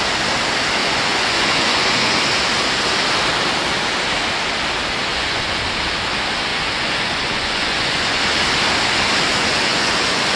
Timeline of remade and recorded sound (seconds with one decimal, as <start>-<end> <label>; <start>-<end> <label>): 0.0-0.8 recorded; 0.8-2.2 remade; 2.2-5.1 recorded; 5.1-5.6 remade; 5.6-6.5 recorded; 6.5-8.2 remade; 8.2-9.4 recorded; 9.4-10.4 remade